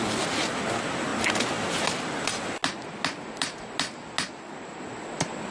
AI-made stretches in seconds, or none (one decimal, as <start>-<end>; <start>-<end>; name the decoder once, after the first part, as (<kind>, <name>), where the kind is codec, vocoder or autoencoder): none